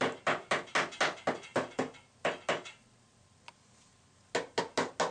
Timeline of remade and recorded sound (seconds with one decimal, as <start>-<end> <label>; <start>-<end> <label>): 0.0-5.1 recorded